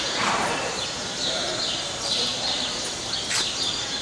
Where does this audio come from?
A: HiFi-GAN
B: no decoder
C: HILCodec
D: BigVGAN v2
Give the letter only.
D